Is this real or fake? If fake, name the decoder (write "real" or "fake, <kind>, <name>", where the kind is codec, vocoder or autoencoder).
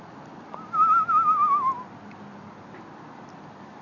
real